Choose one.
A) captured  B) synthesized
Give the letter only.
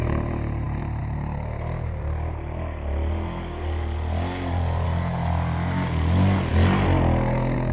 A